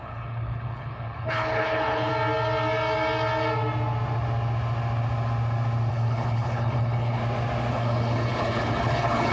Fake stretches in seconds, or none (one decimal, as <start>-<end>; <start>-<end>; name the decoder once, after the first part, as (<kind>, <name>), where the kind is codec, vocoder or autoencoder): 0.0-2.1 (codec, HILCodec); 5.9-7.2; 7.7-9.3